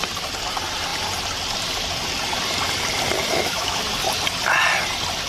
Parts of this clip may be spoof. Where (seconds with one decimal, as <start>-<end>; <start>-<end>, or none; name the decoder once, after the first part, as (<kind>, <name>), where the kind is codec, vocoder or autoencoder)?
3.3-3.8 (autoencoder, DAC-VAE)